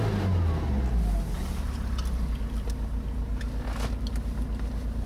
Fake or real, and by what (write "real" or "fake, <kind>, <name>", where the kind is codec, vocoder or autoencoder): real